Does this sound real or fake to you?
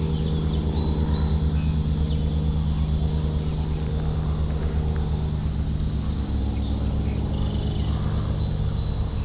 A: real